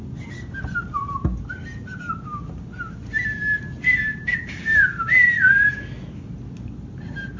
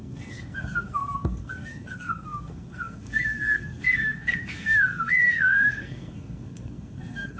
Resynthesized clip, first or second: second